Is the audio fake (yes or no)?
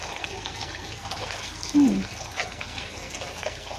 yes